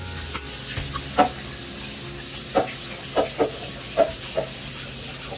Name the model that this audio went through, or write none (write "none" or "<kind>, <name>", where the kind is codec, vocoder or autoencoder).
none